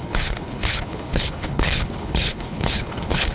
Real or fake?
fake